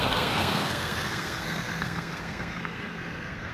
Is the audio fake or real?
fake